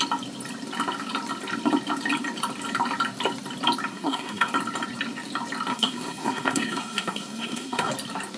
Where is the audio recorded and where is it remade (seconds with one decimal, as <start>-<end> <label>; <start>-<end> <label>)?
0.0-3.9 recorded; 3.9-4.5 remade; 4.5-5.7 recorded; 5.7-7.9 remade; 7.9-8.4 recorded